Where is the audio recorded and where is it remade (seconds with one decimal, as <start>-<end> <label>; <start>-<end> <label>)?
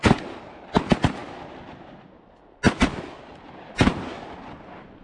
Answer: 0.0-5.0 recorded